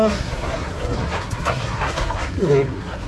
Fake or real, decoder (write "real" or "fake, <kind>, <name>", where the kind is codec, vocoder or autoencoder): fake, codec, SNAC